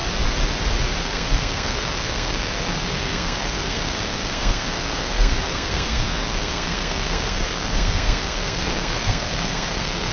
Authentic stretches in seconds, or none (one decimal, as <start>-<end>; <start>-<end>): 0.0-1.0